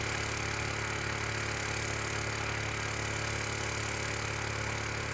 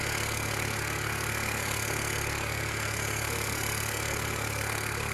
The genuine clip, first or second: first